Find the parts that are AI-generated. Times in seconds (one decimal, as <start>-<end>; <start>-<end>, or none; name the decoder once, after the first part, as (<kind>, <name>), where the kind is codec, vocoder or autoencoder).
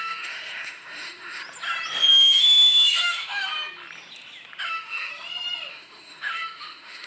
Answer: 0.0-1.4 (autoencoder, DAC-VAE); 2.1-3.5; 4.6-5.1; 5.7-7.1